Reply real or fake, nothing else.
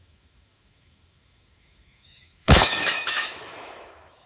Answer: fake